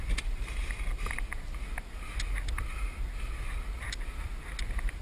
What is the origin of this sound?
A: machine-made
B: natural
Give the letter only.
B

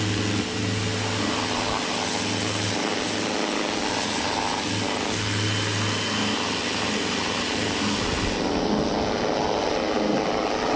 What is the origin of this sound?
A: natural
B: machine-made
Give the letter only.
A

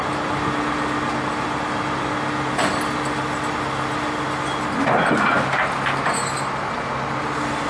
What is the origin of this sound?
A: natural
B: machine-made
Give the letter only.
A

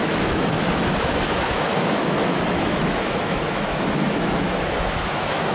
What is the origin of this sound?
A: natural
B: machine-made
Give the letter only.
B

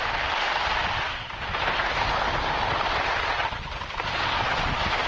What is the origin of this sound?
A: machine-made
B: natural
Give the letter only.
B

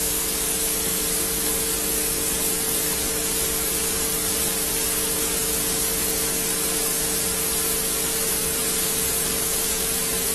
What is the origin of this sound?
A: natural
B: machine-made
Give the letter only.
B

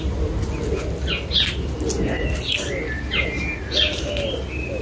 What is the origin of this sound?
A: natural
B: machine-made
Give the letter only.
A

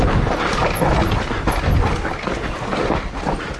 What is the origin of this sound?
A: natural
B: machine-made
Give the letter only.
A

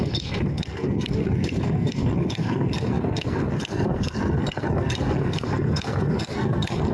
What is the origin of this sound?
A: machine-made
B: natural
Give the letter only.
A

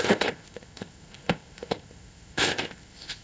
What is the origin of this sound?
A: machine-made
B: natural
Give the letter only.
A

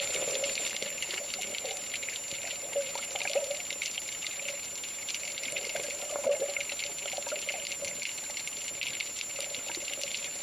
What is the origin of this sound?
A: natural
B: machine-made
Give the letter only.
A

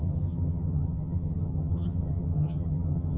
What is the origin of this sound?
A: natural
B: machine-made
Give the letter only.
B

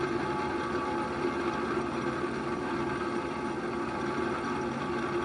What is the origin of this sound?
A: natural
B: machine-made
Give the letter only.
A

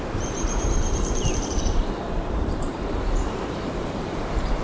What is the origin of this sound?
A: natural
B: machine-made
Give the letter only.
B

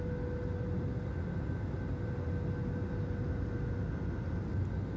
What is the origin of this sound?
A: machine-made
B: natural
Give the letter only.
B